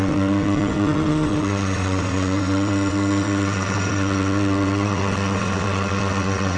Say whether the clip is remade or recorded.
remade